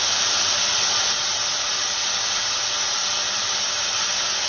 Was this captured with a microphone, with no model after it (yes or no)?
yes